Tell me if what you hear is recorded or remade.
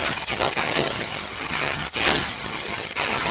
remade